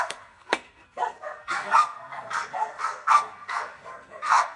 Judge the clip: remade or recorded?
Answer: remade